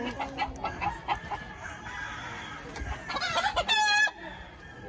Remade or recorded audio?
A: recorded